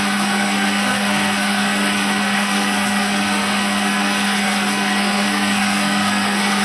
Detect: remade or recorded remade